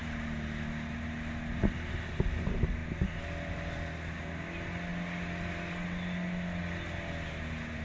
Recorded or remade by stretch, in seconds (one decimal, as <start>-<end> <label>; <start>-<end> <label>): 0.0-7.8 recorded